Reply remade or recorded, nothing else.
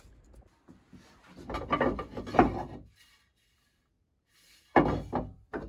recorded